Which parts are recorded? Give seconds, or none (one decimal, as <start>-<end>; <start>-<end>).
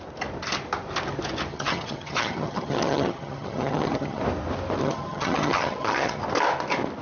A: 0.0-1.5; 4.2-4.8; 6.2-7.0